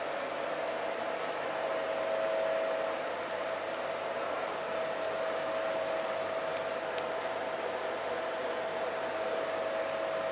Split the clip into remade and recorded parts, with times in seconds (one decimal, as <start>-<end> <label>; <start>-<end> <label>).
0.0-10.3 recorded